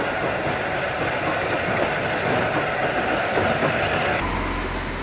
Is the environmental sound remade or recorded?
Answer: recorded